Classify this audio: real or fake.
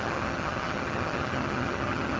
fake